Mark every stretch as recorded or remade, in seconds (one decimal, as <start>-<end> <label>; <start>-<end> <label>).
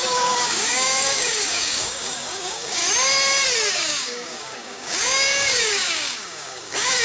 0.0-2.8 remade; 2.8-3.7 recorded; 3.7-7.0 remade